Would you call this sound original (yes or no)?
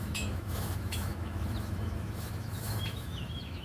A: no